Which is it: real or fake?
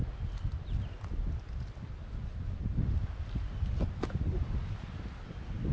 real